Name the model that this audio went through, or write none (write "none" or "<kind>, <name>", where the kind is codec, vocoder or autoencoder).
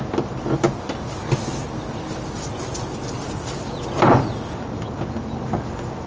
none